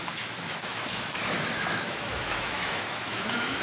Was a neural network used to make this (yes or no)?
yes